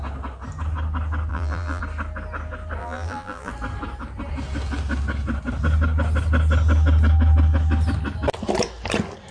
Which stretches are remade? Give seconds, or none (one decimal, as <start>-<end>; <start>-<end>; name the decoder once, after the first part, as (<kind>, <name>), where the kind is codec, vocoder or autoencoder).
1.3-1.8 (vocoder, BigVGAN v2); 2.8-3.5

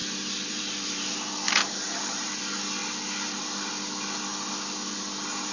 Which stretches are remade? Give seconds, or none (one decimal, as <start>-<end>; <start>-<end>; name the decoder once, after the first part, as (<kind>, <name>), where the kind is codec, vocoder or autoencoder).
0.0-1.1 (vocoder, BigVGAN v2); 1.6-2.4

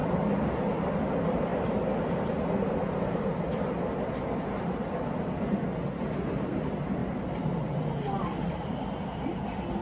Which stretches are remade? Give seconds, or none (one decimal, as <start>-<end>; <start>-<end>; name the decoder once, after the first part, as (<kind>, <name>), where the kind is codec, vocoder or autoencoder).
0.0-0.6 (vocoder, BigVGAN v2); 7.0-8.7

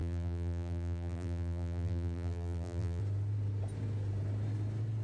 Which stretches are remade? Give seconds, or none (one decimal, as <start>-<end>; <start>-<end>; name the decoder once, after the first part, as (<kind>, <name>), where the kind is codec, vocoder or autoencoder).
0.0-3.0 (vocoder, BigVGAN v2)

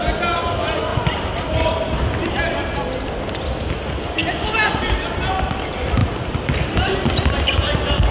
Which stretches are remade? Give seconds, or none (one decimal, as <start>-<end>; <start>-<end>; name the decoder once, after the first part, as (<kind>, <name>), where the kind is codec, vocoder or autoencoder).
0.9-2.3 (vocoder, BigVGAN v2); 6.0-6.9

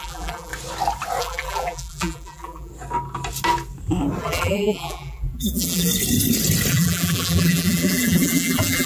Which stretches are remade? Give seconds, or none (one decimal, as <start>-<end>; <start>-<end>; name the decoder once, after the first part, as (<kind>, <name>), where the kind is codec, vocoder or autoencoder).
0.0-0.5 (vocoder, BigVGAN v2); 1.2-2.7; 4.2-5.9; 6.7-8.9

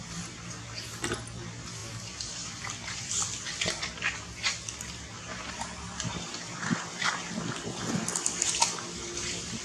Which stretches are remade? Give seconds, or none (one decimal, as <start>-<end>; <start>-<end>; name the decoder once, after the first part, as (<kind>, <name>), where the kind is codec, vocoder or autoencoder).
none

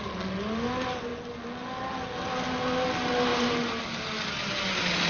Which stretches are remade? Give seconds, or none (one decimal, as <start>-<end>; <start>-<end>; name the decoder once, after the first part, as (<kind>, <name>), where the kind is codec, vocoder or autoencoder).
3.3-3.8 (vocoder, BigVGAN v2)